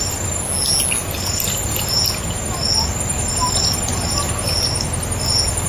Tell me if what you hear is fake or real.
real